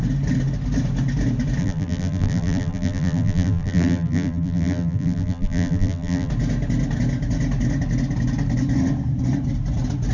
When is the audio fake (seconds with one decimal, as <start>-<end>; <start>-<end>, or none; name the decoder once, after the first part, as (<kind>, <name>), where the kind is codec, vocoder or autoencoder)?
1.6-6.3 (vocoder, BigVGAN v2)